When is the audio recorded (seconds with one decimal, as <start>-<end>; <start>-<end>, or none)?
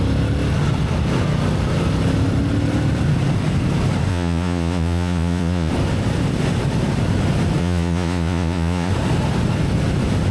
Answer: 0.0-4.1; 5.7-7.6; 8.9-10.3